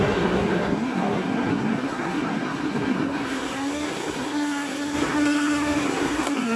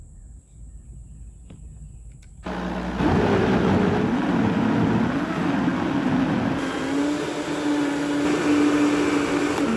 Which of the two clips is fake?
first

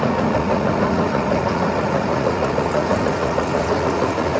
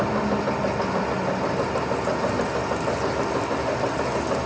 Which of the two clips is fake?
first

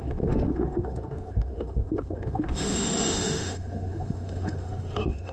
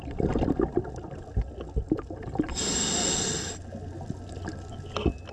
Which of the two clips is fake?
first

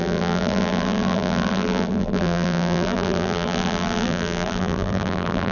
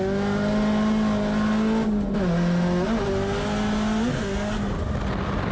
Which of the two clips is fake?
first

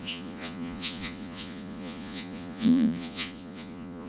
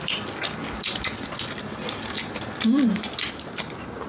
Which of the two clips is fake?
first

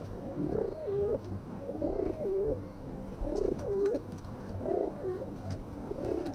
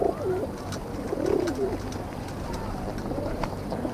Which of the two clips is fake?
first